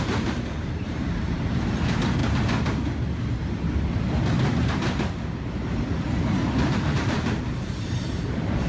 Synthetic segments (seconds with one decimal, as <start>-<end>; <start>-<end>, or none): 0.0-2.2; 6.7-8.7